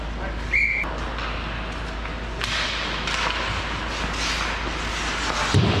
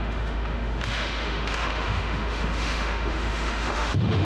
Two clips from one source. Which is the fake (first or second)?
second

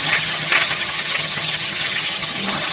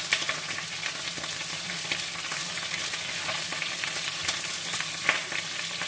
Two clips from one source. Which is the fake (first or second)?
first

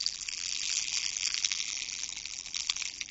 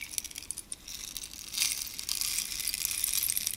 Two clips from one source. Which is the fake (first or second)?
first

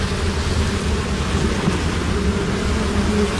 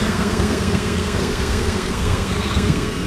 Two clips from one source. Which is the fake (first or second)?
second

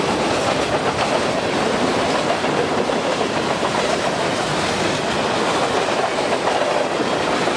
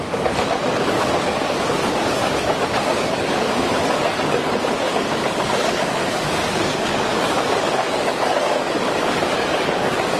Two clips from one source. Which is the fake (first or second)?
second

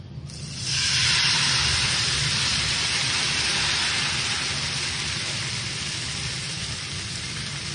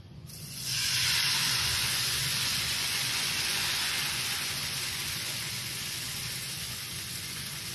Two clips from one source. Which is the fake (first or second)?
second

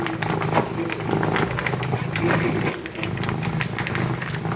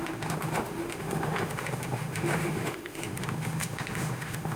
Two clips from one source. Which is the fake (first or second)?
second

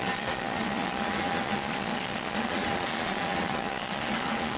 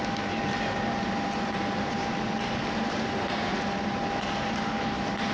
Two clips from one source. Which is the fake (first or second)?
first